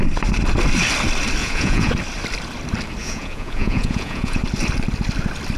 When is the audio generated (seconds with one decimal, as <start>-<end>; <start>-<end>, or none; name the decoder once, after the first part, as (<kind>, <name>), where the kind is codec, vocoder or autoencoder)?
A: 1.4-1.9 (vocoder, Vocos); 3.0-4.4